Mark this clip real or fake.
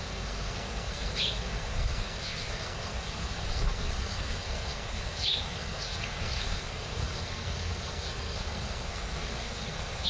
fake